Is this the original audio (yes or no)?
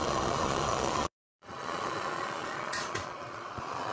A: no